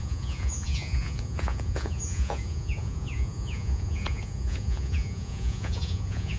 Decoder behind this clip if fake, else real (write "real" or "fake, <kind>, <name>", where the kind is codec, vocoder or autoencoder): fake, vocoder, Vocos